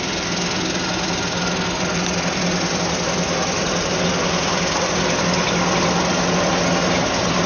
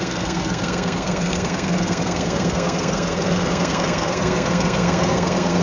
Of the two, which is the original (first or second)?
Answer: first